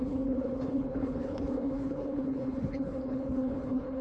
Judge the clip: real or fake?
fake